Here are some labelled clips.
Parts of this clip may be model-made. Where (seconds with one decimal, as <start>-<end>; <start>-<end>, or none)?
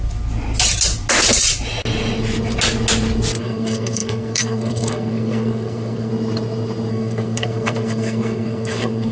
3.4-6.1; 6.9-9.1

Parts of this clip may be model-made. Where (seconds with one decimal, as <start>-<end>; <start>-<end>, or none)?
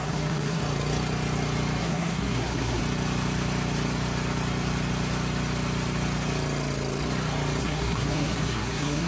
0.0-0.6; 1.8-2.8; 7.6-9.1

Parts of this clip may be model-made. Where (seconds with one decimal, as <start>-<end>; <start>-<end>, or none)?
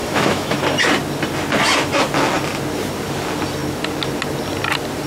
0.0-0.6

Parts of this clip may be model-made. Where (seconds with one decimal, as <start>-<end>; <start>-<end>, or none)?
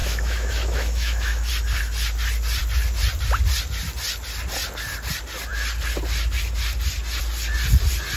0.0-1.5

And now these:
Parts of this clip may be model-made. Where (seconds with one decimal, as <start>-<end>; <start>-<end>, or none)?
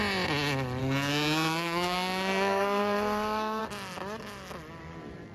0.8-3.6